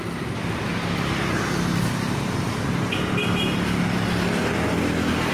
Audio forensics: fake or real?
real